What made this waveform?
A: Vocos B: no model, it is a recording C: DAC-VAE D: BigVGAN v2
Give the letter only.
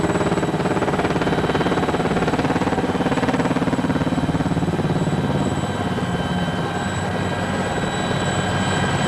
B